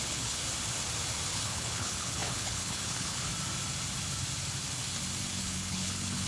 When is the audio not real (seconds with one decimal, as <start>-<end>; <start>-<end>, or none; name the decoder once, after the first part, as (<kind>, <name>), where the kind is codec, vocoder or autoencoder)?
0.0-0.4 (codec, HILCodec); 1.3-3.3; 5.4-6.3